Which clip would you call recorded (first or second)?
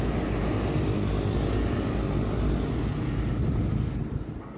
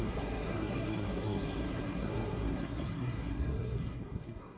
first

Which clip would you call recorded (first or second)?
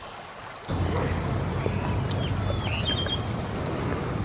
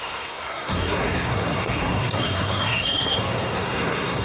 first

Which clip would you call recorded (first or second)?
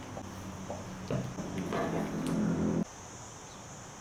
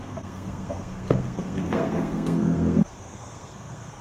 first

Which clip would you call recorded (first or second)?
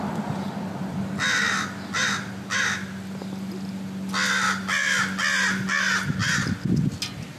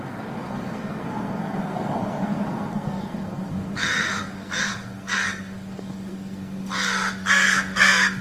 first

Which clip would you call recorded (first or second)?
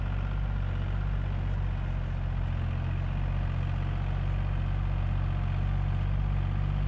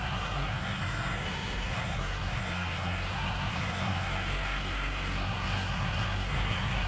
first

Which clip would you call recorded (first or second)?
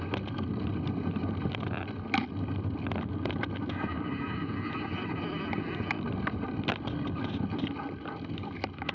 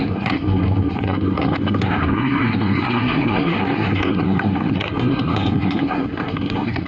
first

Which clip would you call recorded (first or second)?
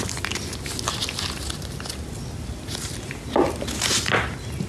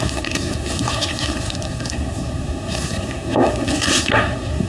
first